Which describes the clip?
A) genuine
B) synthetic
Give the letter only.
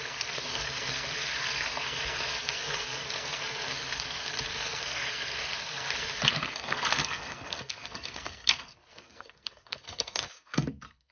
B